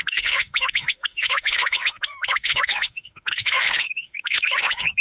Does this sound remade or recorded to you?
remade